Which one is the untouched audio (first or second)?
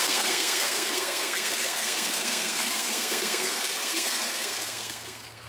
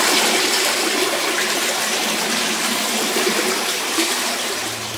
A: second